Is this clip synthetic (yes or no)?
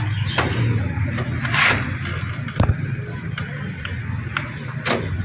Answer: no